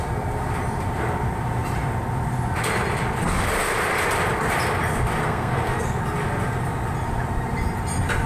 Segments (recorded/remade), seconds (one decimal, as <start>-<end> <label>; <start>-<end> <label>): 0.0-5.2 recorded; 5.2-6.0 remade; 6.0-8.3 recorded